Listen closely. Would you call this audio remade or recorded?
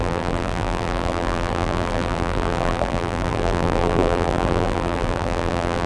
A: remade